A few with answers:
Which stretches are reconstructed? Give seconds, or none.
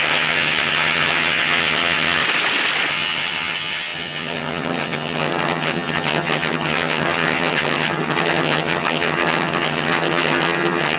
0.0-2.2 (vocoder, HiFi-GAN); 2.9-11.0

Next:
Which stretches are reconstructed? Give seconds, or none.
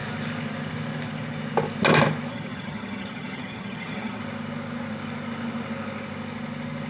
2.3-4.2 (vocoder, HiFi-GAN)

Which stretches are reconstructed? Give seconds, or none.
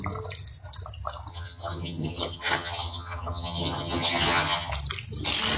1.3-4.7 (vocoder, HiFi-GAN)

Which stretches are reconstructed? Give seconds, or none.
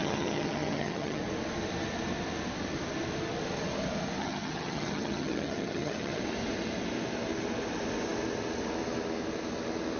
0.0-1.2 (vocoder, HiFi-GAN); 4.2-6.2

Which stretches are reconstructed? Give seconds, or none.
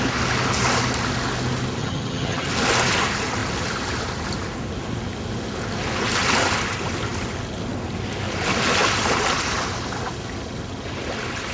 1.8-2.5 (vocoder, HiFi-GAN)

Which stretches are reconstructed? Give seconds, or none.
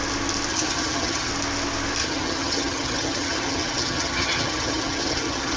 0.5-1.3 (vocoder, HiFi-GAN); 2.0-5.6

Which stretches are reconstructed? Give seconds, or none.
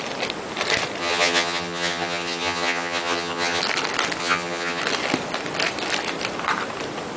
1.0-3.6 (vocoder, HiFi-GAN); 4.2-4.8